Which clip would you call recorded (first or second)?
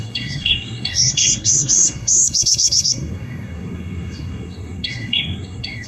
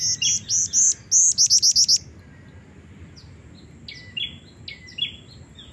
second